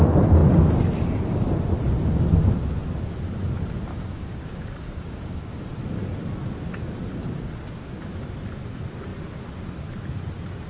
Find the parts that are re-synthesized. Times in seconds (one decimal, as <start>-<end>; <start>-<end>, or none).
3.9-5.6